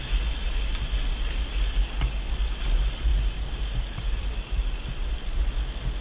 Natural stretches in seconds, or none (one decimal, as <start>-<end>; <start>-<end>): 0.0-3.1; 5.4-6.0